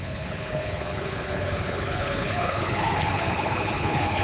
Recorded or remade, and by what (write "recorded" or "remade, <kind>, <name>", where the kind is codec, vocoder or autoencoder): remade, codec, HILCodec